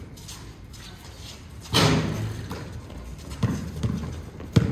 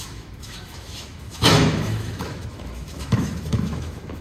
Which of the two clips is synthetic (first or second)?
second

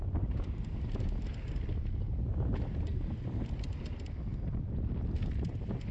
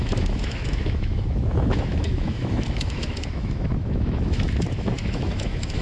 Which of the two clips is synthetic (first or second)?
second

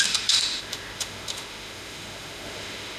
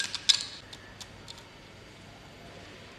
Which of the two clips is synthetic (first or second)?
first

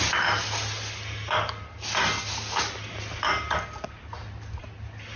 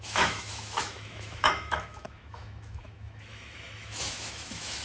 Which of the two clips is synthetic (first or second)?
second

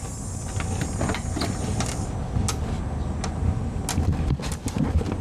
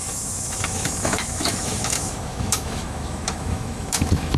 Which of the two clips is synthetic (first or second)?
second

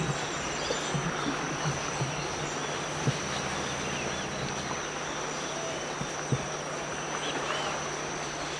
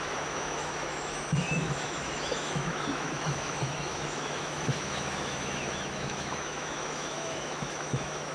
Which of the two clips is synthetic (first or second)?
second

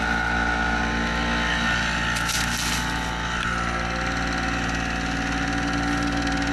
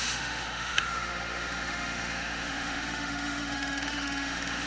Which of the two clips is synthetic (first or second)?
second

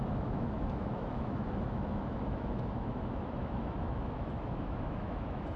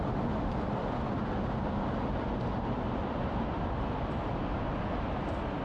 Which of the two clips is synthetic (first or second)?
first